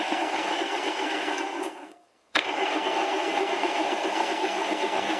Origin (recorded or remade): remade